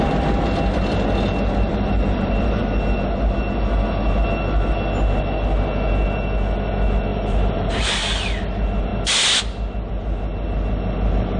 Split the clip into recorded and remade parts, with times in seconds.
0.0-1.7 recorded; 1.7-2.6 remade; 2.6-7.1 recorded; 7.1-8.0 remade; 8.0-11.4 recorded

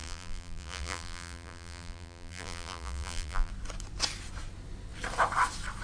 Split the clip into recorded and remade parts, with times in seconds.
0.0-3.5 remade; 3.5-5.8 recorded

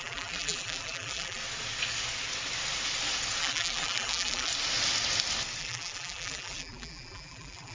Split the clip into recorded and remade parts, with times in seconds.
0.0-1.4 remade; 1.4-3.4 recorded; 3.4-4.5 remade; 4.5-5.6 recorded; 5.6-7.7 remade

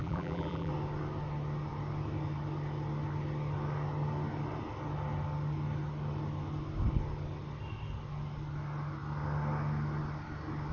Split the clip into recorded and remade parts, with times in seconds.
0.0-0.7 remade; 0.7-10.7 recorded